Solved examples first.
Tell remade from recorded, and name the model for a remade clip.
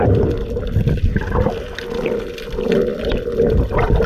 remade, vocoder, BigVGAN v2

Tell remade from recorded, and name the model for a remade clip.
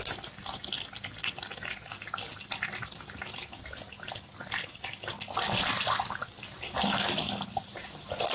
recorded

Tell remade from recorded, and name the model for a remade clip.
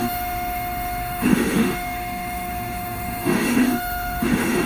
remade, autoencoder, DAC-VAE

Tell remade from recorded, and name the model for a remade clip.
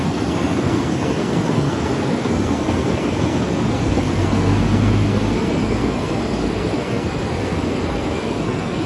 remade, codec, SNAC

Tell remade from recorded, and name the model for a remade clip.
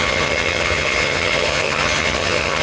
remade, vocoder, HiFi-GAN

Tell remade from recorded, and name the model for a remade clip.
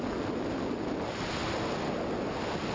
recorded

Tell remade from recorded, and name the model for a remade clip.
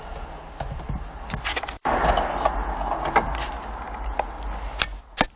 recorded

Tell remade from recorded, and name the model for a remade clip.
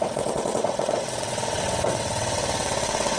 remade, vocoder, WaveNeXt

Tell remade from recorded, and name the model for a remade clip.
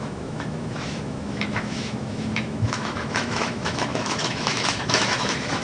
remade, autoencoder, DAC-VAE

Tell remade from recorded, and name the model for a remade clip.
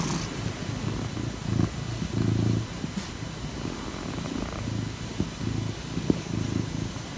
recorded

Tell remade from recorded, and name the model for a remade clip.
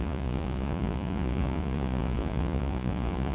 remade, vocoder, Vocos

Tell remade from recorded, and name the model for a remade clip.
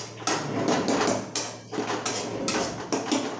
recorded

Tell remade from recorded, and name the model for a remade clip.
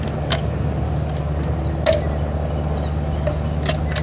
recorded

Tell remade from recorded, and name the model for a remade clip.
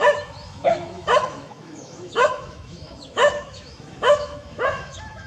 remade, autoencoder, DAC-VAE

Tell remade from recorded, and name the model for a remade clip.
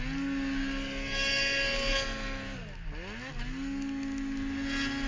recorded